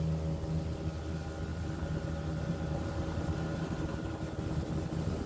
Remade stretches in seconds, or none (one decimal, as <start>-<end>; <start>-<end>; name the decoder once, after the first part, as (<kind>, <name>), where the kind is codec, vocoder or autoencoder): 1.5-4.7 (vocoder, BigVGAN v2)